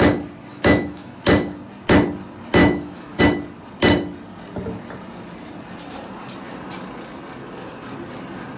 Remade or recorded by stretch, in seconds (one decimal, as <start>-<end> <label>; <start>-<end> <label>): 0.0-0.5 recorded; 0.5-1.2 remade; 1.2-2.6 recorded; 2.6-3.2 remade; 3.2-8.6 recorded

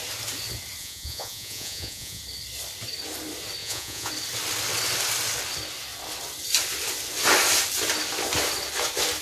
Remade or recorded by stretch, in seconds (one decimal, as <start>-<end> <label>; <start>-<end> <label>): 0.0-0.8 recorded; 0.8-2.2 remade; 2.2-3.6 recorded; 3.6-4.1 remade; 4.1-9.2 recorded

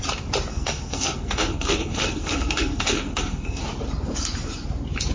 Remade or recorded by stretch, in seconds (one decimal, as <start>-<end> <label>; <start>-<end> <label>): 0.0-0.5 recorded; 0.5-3.6 remade; 3.6-5.1 recorded

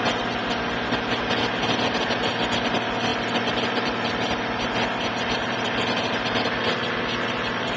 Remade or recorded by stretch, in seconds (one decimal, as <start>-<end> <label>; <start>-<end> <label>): 0.0-7.8 recorded

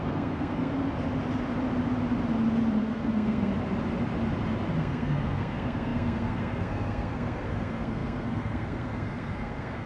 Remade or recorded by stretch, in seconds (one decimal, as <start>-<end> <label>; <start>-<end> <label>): 0.0-0.7 remade; 0.7-2.8 recorded; 2.8-3.5 remade; 3.5-4.8 recorded; 4.8-9.9 remade

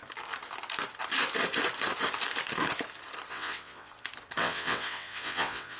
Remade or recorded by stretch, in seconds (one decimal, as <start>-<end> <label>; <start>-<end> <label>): 0.0-3.3 recorded; 3.3-3.9 remade; 3.9-4.4 recorded; 4.4-5.8 remade

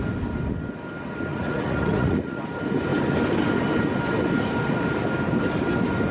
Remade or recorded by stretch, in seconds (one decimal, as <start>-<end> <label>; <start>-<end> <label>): 0.0-1.3 recorded; 1.3-2.4 remade; 2.4-6.1 recorded

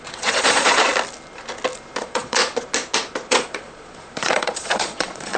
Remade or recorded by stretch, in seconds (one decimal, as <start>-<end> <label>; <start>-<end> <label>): 0.0-0.9 remade; 0.9-2.0 recorded; 2.0-2.4 remade; 2.4-3.3 recorded; 3.3-5.4 remade